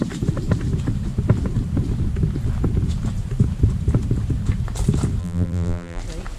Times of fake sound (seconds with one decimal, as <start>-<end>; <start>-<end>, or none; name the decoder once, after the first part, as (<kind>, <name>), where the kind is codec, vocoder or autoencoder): 5.2-6.0 (vocoder, BigVGAN v2)